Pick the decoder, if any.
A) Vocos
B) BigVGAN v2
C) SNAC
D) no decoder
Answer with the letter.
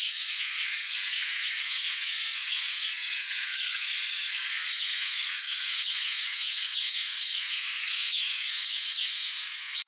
C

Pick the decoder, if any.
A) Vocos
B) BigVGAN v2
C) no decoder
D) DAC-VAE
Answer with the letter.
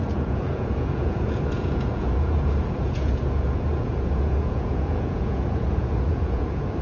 A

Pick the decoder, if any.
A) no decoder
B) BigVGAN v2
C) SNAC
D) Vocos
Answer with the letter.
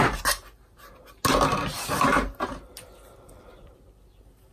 A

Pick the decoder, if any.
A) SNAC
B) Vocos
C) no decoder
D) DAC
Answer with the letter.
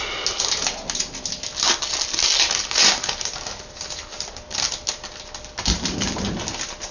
C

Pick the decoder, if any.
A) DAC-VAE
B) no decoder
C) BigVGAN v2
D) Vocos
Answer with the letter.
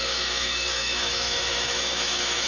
A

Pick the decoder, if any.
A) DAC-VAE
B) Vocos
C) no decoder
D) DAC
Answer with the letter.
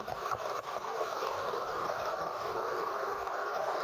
D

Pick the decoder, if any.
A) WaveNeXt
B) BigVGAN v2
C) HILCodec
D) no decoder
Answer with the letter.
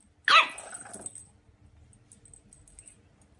D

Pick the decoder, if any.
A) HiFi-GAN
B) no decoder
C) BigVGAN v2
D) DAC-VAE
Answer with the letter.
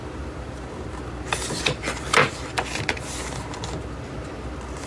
B